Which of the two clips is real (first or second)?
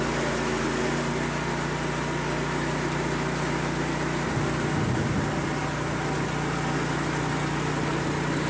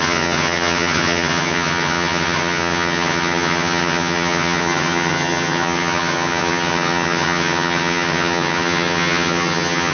first